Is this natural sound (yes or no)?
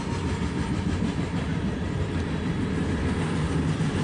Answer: yes